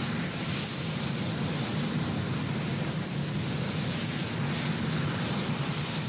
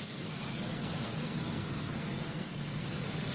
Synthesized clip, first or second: second